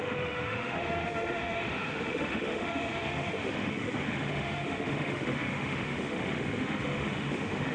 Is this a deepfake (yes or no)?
yes